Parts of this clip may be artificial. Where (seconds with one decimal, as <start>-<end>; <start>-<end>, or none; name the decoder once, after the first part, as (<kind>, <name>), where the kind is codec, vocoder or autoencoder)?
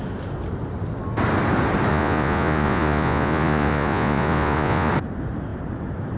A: 1.9-4.9 (vocoder, Vocos)